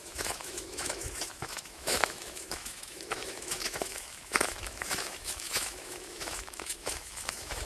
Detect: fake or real fake